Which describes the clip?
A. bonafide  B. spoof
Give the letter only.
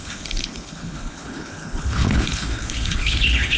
B